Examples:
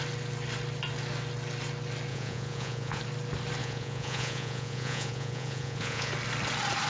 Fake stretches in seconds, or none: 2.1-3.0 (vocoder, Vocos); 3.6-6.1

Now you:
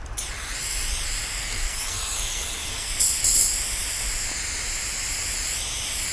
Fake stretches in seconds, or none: 1.4-2.9 (codec, SNAC)

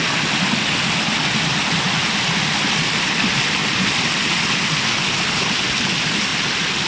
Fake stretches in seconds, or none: none

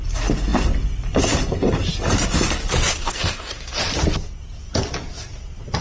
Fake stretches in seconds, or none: 2.9-3.8 (codec, SNAC)

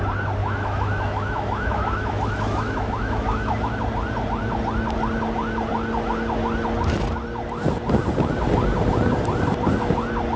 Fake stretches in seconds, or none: 0.4-3.7 (autoencoder, DAC-VAE)